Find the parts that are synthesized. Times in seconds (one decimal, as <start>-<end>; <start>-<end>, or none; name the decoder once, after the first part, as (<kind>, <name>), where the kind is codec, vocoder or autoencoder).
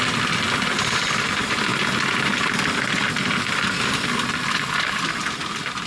0.0-1.7 (vocoder, BigVGAN v2); 4.6-5.9